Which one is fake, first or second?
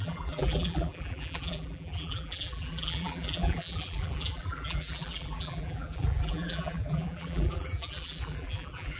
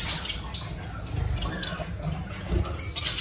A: first